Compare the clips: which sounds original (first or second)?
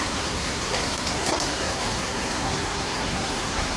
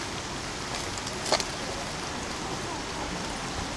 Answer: second